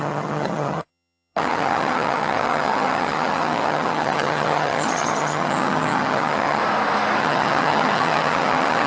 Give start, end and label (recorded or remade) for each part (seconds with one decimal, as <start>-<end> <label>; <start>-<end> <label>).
0.0-6.6 remade; 6.6-7.2 recorded; 7.2-8.9 remade